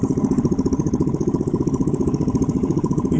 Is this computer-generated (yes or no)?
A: yes